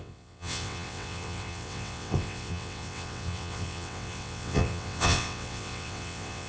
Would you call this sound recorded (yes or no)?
no